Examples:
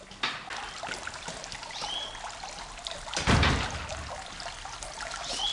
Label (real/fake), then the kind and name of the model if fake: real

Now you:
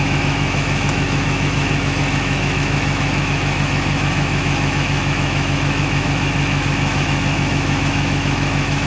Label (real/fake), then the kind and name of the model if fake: fake, autoencoder, DAC-VAE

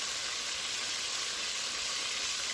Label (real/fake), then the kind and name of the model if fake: real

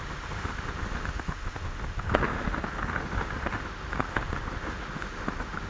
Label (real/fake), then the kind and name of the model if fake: fake, autoencoder, DAC-VAE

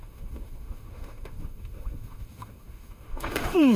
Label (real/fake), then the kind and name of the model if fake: fake, autoencoder, DAC-VAE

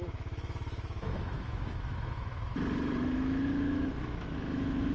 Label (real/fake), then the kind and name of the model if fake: fake, autoencoder, DAC-VAE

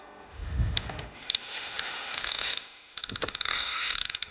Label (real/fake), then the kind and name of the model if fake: fake, autoencoder, DAC-VAE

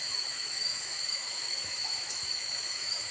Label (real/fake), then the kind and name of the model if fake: fake, autoencoder, DAC-VAE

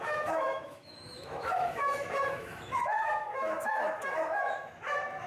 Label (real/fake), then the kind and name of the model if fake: fake, autoencoder, DAC-VAE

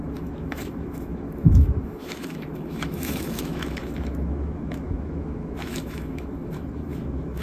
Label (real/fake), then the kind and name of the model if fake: fake, autoencoder, DAC-VAE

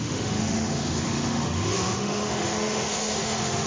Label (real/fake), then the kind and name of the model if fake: fake, autoencoder, DAC-VAE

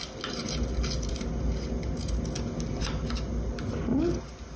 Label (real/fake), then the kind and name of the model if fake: real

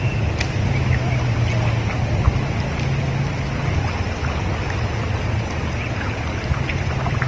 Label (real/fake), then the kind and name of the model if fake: real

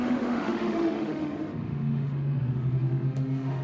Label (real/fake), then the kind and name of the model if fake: fake, autoencoder, DAC-VAE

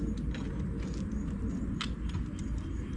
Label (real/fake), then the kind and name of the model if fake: real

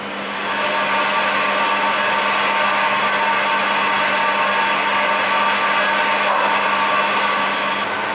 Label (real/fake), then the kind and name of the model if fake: real